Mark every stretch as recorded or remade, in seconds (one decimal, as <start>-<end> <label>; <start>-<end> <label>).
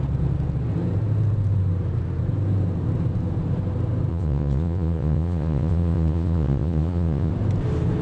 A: 0.0-4.1 recorded; 4.1-7.3 remade; 7.3-8.0 recorded